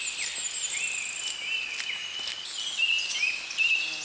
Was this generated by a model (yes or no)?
no